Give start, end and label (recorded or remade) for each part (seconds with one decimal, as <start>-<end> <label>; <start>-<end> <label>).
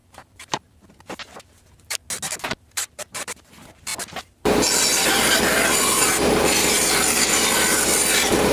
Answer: 0.0-2.0 remade; 2.0-2.7 recorded; 2.7-3.9 remade; 3.9-5.7 recorded; 5.7-8.5 remade